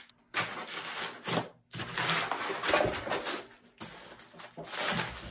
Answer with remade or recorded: recorded